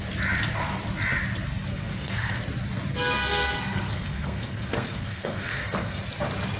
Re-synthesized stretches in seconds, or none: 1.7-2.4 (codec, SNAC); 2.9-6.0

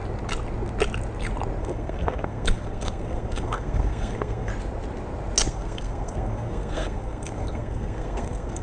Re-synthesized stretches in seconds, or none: 1.6-4.5 (codec, SNAC); 5.5-8.6

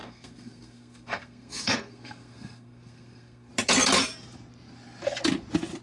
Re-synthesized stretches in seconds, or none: 0.0-3.5 (codec, SNAC)

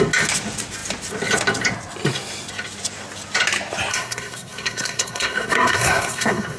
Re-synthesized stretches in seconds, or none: 3.9-6.6 (codec, SNAC)